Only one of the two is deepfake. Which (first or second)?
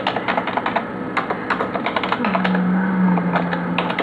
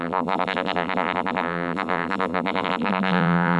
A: second